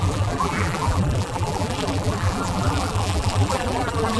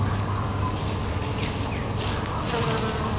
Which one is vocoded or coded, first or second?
first